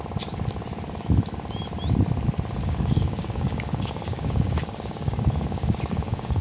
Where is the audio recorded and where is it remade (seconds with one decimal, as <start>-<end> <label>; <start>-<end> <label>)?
0.0-2.6 recorded; 2.6-6.4 remade